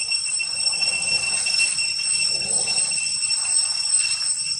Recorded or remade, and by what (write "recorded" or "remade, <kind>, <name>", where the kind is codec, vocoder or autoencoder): remade, vocoder, BigVGAN v2